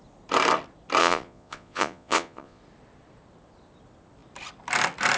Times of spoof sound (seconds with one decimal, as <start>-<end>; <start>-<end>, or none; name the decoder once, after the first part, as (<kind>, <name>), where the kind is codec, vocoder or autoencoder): 1.0-2.6 (vocoder, Vocos)